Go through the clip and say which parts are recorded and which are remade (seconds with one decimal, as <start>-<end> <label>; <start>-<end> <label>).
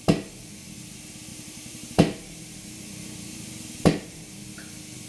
0.0-1.3 recorded; 1.3-4.4 remade; 4.4-5.1 recorded